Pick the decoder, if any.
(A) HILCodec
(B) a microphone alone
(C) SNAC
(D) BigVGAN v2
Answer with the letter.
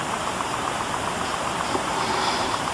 D